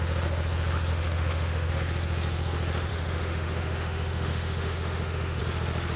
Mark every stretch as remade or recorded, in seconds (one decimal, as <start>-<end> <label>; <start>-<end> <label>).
0.0-0.9 recorded; 0.9-1.7 remade; 1.7-2.9 recorded; 2.9-5.4 remade; 5.4-6.0 recorded